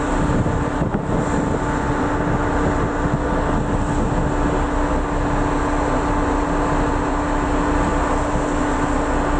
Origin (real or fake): real